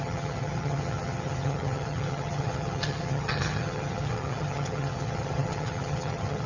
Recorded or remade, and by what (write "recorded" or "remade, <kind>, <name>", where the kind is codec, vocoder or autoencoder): remade, vocoder, HiFi-GAN